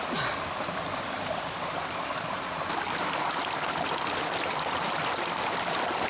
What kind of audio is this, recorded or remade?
recorded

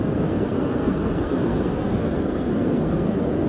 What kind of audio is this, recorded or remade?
remade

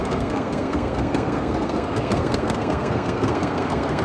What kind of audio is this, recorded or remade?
remade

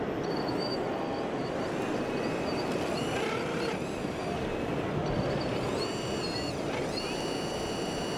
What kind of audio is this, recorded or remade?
recorded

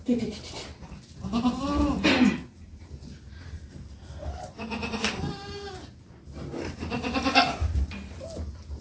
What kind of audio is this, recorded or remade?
recorded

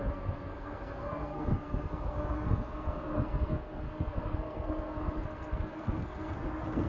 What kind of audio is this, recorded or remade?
remade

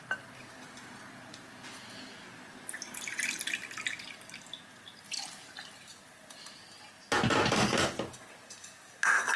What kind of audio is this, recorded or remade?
recorded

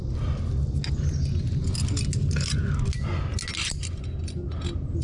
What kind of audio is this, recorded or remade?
recorded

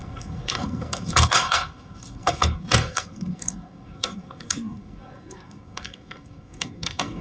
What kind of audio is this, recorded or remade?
remade